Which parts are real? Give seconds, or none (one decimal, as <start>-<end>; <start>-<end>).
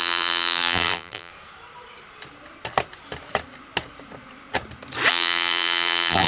1.3-5.1